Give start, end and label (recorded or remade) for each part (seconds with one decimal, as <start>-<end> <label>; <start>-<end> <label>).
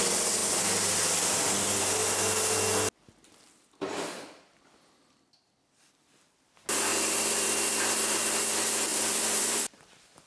0.0-6.9 recorded; 6.9-8.4 remade; 8.4-8.9 recorded; 8.9-9.8 remade; 9.8-10.3 recorded